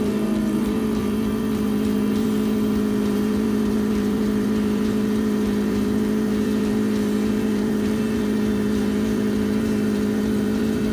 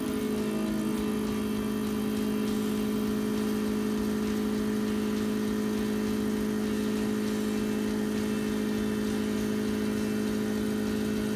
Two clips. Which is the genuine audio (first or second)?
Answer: second